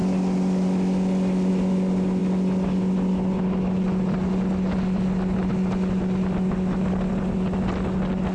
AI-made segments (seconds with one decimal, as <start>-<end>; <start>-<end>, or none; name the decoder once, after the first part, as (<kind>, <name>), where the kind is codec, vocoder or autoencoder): none